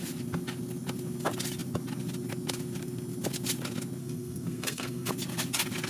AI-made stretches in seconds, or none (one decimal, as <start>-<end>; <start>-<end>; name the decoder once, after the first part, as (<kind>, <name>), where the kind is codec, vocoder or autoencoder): 4.0-5.1 (codec, SNAC)